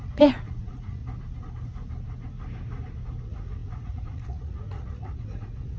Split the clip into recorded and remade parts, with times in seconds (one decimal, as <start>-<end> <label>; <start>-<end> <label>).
0.0-1.0 remade; 1.0-3.2 recorded; 3.2-5.8 remade